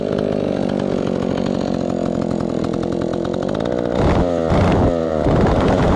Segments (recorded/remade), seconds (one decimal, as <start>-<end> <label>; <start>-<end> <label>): 0.0-5.0 recorded; 5.0-6.0 remade